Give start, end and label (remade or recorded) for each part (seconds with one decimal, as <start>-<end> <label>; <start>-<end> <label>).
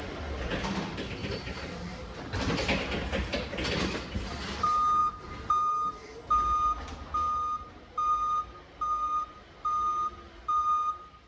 0.0-1.2 recorded; 1.2-2.3 remade; 2.3-5.0 recorded; 5.0-5.7 remade; 5.7-11.3 recorded